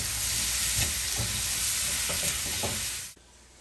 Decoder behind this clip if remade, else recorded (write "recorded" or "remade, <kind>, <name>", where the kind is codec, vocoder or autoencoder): recorded